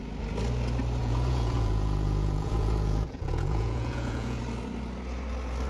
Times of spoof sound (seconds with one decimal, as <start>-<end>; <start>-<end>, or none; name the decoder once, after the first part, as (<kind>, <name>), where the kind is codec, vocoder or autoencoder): 1.0-4.4 (vocoder, Vocos)